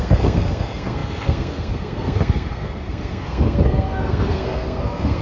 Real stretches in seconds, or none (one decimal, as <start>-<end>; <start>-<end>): none